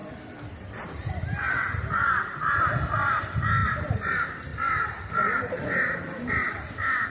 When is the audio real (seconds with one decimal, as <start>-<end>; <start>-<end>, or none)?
3.2-3.6; 4.1-4.5; 6.3-7.1